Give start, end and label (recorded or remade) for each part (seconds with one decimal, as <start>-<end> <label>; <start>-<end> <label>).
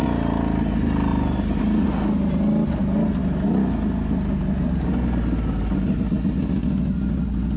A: 0.0-7.6 recorded